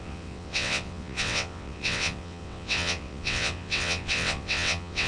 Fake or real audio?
fake